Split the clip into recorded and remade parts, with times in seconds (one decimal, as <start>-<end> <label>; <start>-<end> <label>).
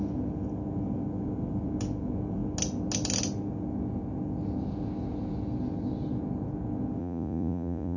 0.0-7.0 recorded; 7.0-8.0 remade